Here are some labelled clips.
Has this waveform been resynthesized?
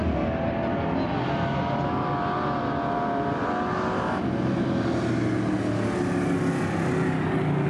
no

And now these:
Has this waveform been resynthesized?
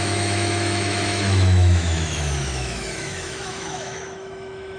yes